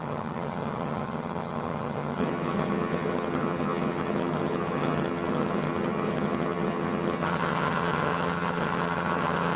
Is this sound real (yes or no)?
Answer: no